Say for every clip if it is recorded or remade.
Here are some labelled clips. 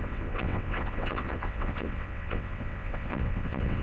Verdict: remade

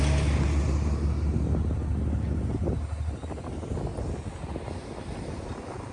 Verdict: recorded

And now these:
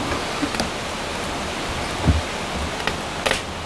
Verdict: recorded